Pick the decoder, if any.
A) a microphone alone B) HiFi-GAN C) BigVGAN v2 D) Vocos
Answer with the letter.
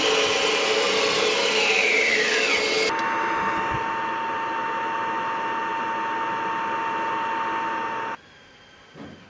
A